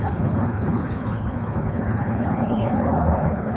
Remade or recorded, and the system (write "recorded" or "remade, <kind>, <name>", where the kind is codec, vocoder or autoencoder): remade, codec, HILCodec